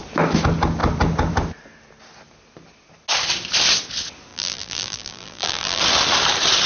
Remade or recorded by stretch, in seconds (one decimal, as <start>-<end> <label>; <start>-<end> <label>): 0.0-4.3 recorded; 4.3-5.8 remade; 5.8-6.7 recorded